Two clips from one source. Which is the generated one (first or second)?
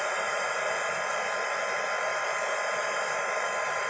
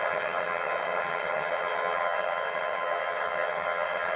second